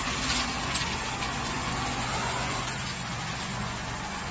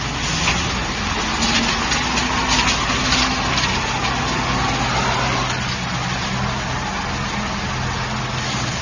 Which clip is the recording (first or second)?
second